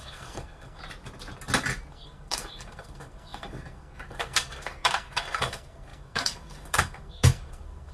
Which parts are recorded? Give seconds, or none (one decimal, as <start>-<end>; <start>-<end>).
0.8-1.9